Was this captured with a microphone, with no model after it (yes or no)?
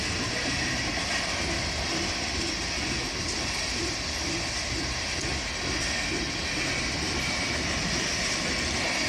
yes